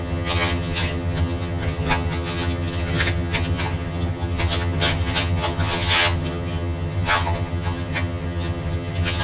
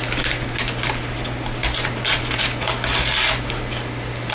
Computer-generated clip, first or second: first